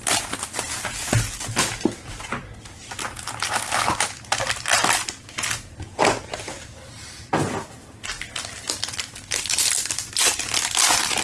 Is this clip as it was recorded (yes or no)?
yes